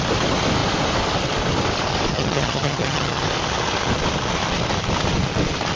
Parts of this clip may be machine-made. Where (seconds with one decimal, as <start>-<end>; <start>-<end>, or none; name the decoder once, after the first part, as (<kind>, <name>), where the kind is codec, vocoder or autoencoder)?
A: 2.1-3.2 (vocoder, HiFi-GAN)